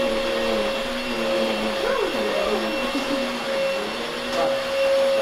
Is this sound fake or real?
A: real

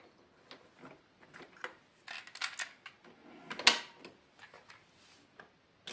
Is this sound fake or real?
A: real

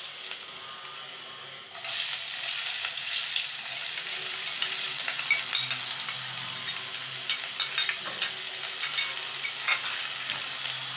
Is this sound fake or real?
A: real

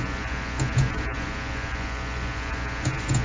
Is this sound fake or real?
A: fake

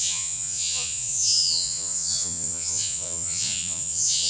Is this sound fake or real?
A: fake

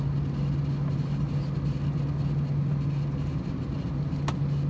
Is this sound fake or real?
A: real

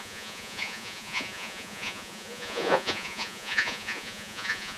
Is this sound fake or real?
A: fake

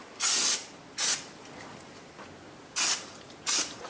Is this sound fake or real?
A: real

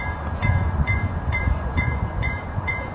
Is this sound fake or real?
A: fake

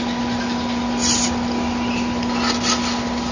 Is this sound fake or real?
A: real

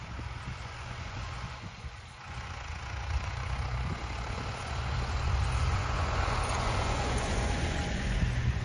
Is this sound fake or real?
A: fake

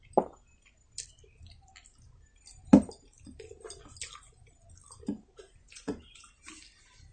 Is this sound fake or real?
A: real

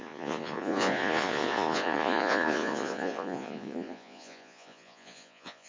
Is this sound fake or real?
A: fake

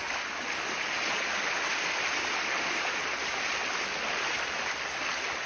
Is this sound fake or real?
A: real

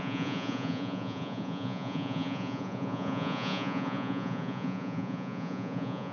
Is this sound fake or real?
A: fake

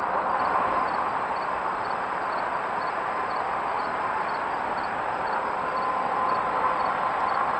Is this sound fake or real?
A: real